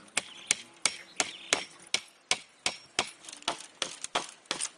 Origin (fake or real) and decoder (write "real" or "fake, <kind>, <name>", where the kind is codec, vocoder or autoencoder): real